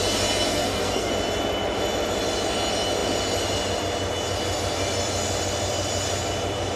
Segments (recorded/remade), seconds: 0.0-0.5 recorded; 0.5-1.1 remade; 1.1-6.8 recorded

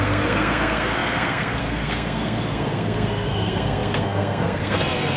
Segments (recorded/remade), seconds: 0.0-5.2 remade

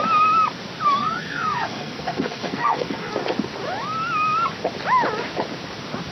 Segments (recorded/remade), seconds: 0.0-1.0 recorded; 1.0-3.1 remade; 3.1-6.1 recorded

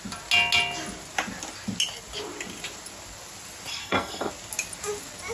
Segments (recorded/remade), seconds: 0.0-3.7 recorded; 3.7-4.3 remade; 4.3-5.3 recorded

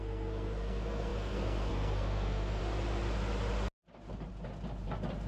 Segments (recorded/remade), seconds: 0.0-2.6 remade; 2.6-5.3 recorded

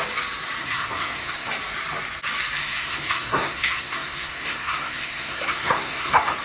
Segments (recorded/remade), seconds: 0.0-0.6 recorded; 0.6-1.5 remade; 1.5-2.6 recorded; 2.6-6.4 remade

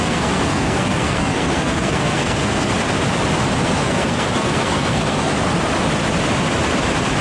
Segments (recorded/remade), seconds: 0.0-2.7 remade; 2.7-3.6 recorded; 3.6-5.3 remade; 5.3-7.2 recorded